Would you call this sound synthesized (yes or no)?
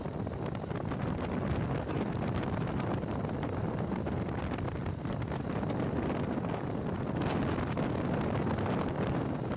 no